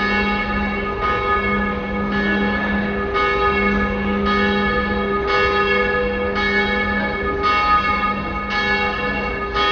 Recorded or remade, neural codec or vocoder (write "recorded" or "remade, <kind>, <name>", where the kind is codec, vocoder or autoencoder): recorded